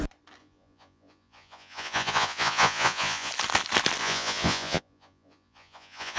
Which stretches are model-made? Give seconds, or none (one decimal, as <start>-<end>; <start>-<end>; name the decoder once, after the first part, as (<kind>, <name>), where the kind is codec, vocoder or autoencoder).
0.4-3.3 (vocoder, Vocos); 4.0-6.2

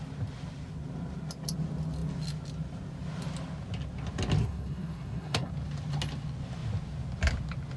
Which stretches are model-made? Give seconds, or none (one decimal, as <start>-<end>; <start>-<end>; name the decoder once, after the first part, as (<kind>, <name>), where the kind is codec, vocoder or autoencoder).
4.4-5.5 (codec, SNAC)

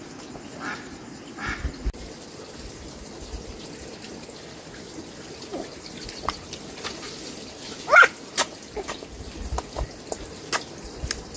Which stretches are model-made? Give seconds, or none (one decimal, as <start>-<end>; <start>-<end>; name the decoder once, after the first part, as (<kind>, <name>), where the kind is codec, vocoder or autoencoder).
none

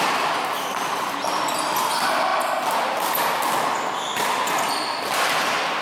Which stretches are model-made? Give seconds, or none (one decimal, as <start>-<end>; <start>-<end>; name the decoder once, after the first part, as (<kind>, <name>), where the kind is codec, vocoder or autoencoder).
none

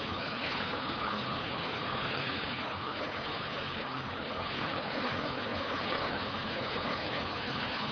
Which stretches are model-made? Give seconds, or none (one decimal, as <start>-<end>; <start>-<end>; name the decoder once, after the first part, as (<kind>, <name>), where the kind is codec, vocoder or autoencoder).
0.0-7.9 (codec, HILCodec)

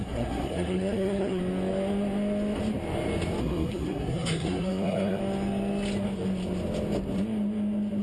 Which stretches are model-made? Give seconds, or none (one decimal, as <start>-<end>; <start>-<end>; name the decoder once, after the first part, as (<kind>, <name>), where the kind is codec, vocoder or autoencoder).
0.0-1.4 (codec, SNAC); 3.4-5.2

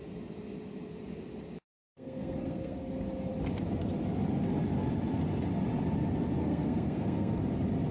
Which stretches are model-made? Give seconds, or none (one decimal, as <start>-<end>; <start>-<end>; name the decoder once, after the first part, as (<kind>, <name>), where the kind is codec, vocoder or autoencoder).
1.9-2.9 (codec, SNAC); 6.4-7.4

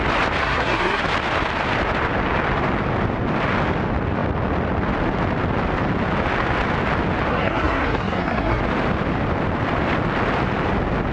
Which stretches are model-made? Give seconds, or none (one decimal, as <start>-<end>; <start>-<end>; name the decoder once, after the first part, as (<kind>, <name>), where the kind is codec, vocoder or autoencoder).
0.4-1.0 (codec, SNAC); 7.3-8.6